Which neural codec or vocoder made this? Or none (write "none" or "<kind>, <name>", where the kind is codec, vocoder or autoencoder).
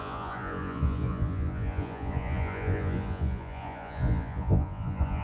vocoder, Vocos